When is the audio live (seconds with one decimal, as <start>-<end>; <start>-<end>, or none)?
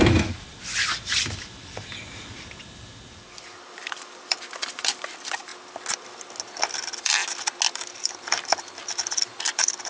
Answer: 5.5-6.6; 7.2-7.7